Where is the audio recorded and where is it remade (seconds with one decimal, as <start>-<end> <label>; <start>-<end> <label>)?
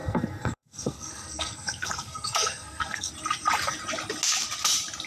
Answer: 0.0-3.1 remade; 3.1-5.1 recorded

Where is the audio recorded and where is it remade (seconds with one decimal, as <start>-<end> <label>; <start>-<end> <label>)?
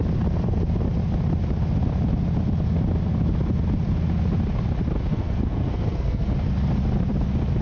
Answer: 0.0-5.1 recorded; 5.1-6.3 remade; 6.3-7.6 recorded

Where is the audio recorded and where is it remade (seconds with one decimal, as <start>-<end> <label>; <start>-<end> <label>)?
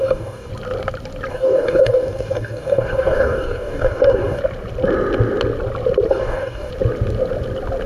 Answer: 0.0-0.5 remade; 0.5-1.3 recorded; 1.3-4.4 remade; 4.4-6.1 recorded; 6.1-6.7 remade; 6.7-7.9 recorded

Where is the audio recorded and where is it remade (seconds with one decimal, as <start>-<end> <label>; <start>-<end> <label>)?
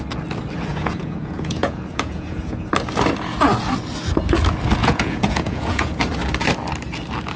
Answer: 0.0-0.7 recorded; 0.7-2.7 remade; 2.7-4.8 recorded; 4.8-6.0 remade; 6.0-7.4 recorded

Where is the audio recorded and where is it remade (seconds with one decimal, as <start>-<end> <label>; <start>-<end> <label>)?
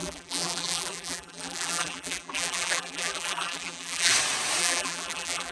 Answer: 0.0-4.1 remade; 4.1-4.6 recorded; 4.6-5.5 remade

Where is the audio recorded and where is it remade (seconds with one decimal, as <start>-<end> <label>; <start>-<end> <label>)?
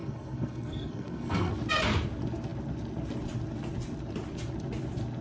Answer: 0.0-1.5 remade; 1.5-5.2 recorded